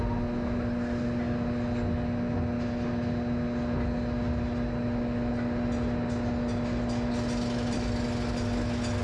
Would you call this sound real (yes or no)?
yes